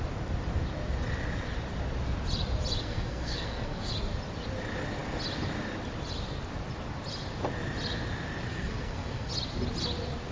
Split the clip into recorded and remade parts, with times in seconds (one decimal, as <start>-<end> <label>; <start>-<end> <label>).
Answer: 0.0-2.8 recorded; 2.8-3.9 remade; 3.9-8.5 recorded; 8.5-9.3 remade; 9.3-10.3 recorded